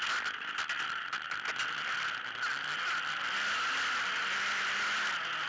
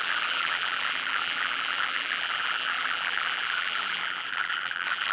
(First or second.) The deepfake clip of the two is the second